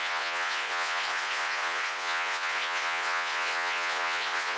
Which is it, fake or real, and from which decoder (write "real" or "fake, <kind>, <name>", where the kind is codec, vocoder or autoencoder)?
fake, vocoder, Vocos